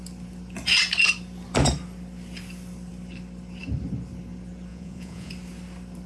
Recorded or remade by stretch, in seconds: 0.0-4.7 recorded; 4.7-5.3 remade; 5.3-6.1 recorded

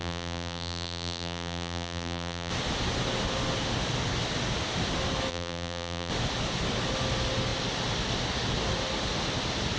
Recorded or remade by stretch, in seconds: 0.0-2.5 remade; 2.5-5.3 recorded; 5.3-6.1 remade; 6.1-9.8 recorded

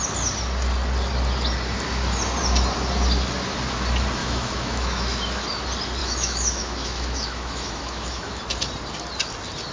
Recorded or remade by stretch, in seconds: 0.0-4.2 recorded; 4.2-5.4 remade; 5.4-6.0 recorded; 6.0-8.4 remade; 8.4-9.7 recorded

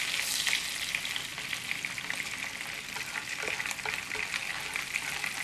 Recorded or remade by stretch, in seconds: 0.0-5.4 recorded

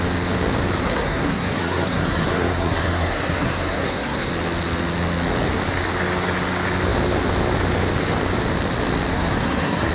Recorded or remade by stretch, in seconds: 0.0-0.8 recorded; 0.8-4.3 remade; 4.3-9.1 recorded; 9.1-9.9 remade